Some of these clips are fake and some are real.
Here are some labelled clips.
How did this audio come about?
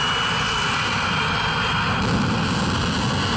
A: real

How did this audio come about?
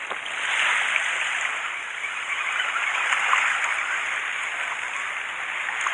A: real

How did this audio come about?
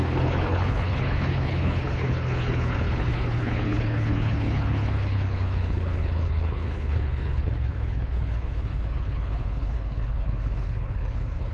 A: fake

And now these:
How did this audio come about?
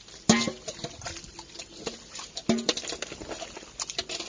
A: real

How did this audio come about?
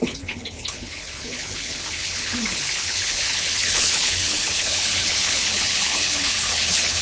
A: fake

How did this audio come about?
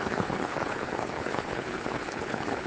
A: fake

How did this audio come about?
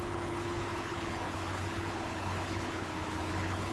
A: fake